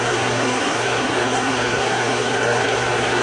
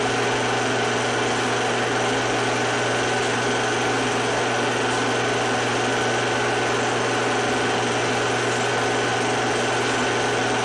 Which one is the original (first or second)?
second